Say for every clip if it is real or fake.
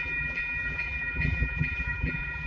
fake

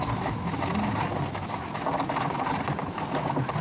real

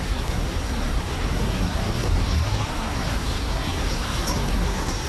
fake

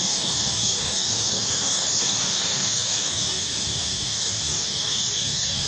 fake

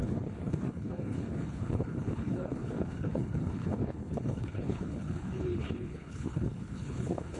fake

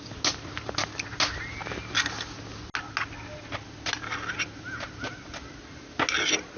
real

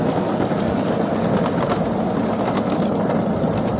real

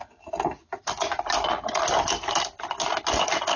real